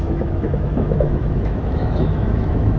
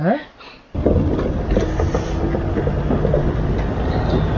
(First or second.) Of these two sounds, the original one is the second